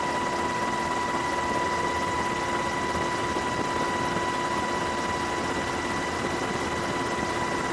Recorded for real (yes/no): yes